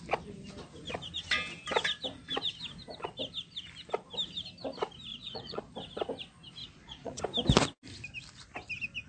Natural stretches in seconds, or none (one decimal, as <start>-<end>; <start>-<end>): 0.0-5.1; 5.7-6.6; 7.2-9.1